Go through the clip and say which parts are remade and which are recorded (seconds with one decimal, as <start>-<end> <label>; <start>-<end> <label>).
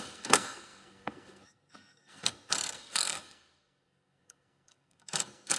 0.0-5.6 remade